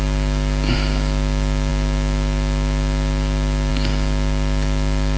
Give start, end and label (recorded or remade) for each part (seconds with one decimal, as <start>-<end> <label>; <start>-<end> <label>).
0.0-5.2 recorded